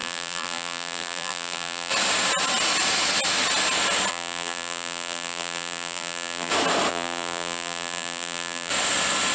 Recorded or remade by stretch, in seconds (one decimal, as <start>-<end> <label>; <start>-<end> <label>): 0.0-1.9 remade; 1.9-4.1 recorded; 4.1-6.5 remade; 6.5-6.9 recorded; 6.9-8.7 remade; 8.7-9.3 recorded